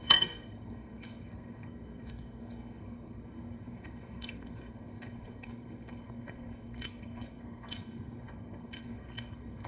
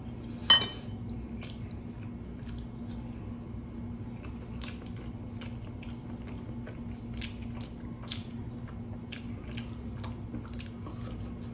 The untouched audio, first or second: second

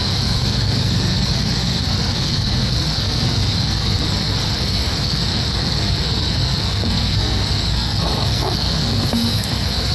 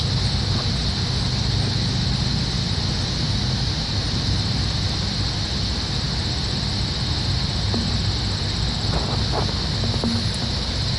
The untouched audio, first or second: second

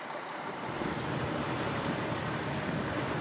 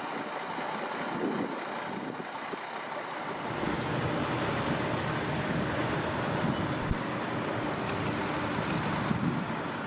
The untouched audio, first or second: second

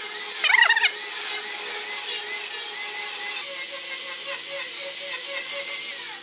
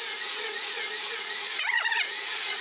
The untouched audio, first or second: first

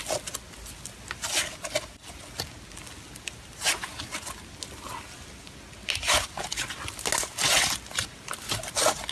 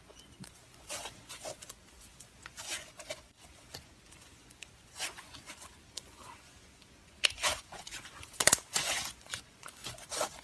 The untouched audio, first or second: first